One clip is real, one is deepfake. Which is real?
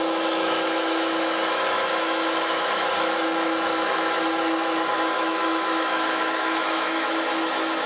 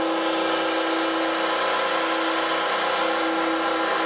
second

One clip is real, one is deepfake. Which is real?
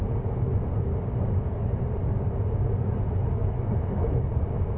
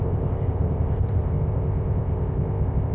first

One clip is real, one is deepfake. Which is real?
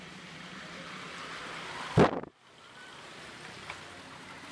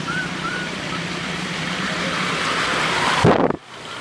first